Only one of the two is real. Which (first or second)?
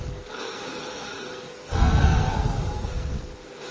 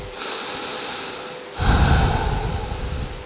second